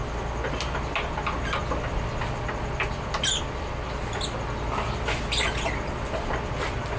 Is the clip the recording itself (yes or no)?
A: yes